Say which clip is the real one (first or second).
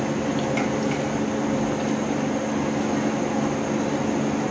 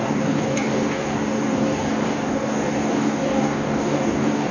first